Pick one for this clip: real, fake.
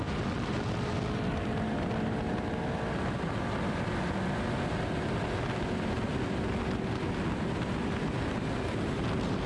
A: real